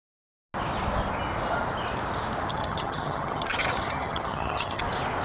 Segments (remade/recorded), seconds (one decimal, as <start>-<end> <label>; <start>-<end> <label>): 0.0-2.5 recorded; 2.5-4.8 remade; 4.8-5.2 recorded